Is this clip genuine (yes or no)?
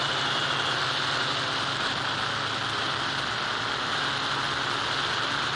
yes